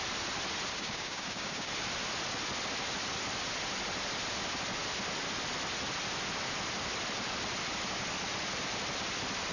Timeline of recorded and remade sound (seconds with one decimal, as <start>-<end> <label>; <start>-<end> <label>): 0.0-0.7 recorded; 0.7-1.7 remade; 1.7-9.5 recorded